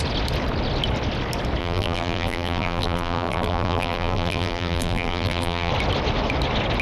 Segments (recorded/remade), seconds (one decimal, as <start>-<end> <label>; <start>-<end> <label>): 0.0-1.6 recorded; 1.6-5.7 remade; 5.7-6.8 recorded